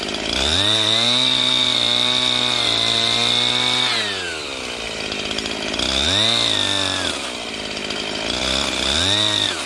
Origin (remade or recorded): recorded